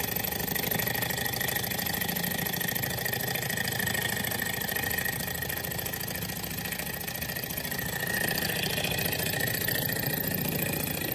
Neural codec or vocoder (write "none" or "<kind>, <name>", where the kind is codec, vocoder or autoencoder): none